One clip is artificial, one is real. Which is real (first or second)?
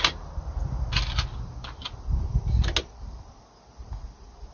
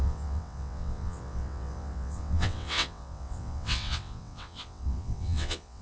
first